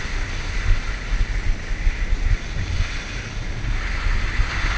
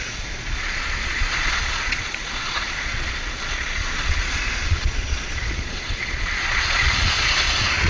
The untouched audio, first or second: first